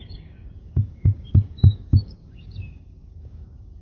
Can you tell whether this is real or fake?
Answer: fake